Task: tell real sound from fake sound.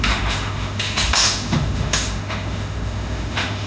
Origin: fake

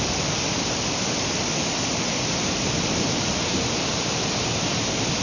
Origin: real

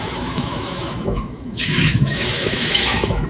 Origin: fake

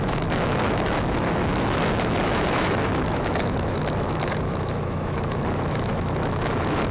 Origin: fake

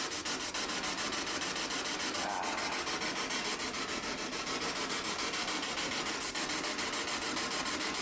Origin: real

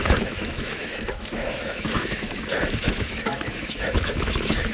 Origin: fake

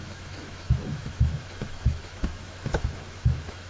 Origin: fake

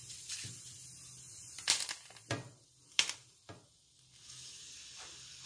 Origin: real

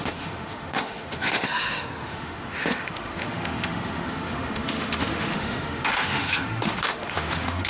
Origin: fake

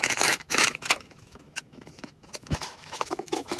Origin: fake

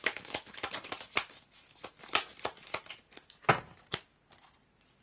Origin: real